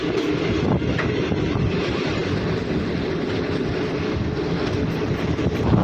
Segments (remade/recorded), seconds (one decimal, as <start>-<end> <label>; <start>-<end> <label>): 0.0-4.0 recorded; 4.0-4.7 remade; 4.7-5.8 recorded